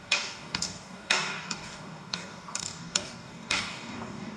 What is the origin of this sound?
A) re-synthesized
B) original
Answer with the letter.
A